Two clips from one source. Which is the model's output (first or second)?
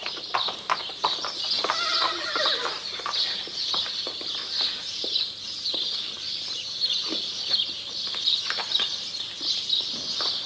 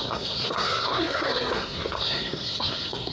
second